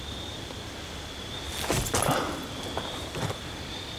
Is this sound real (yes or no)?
yes